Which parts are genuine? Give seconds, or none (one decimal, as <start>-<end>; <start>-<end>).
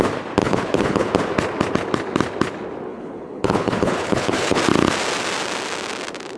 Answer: 0.0-0.4; 1.1-2.9; 4.6-6.4